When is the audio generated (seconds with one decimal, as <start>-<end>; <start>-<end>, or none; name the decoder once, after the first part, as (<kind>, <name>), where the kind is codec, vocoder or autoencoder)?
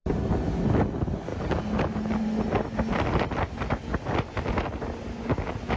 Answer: none